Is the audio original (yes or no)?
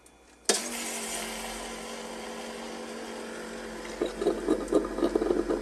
yes